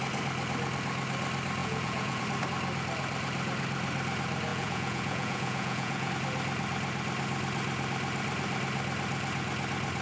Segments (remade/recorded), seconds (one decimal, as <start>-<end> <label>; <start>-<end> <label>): 0.0-1.6 recorded; 1.6-2.2 remade; 2.2-4.5 recorded; 4.5-6.1 remade; 6.1-10.0 recorded